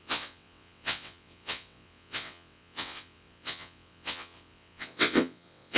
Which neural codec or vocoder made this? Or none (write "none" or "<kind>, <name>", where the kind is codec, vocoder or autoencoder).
vocoder, WaveNeXt